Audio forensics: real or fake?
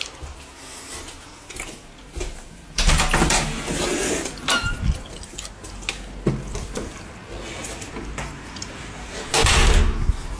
real